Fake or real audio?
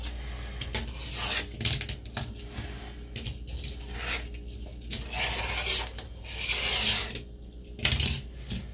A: real